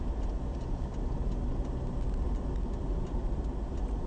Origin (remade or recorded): recorded